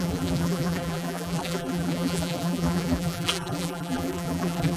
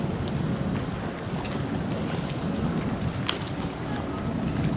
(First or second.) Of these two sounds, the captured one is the second